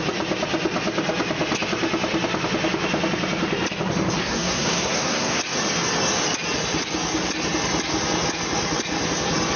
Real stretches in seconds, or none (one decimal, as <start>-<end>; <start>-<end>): 0.0-4.2; 5.4-9.6